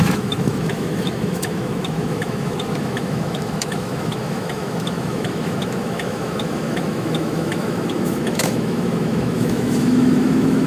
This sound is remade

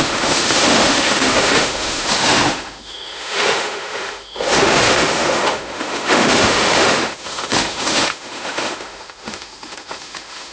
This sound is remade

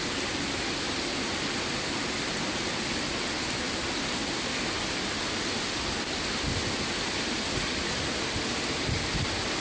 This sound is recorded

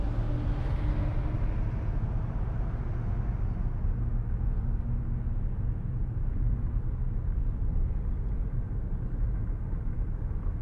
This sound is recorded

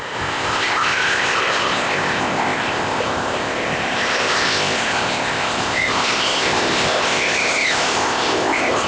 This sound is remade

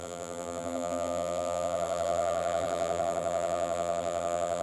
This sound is remade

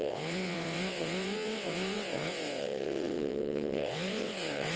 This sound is remade